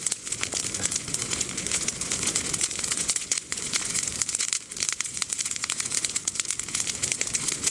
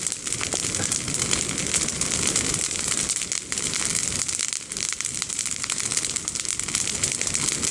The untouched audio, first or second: second